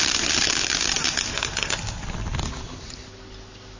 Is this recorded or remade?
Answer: recorded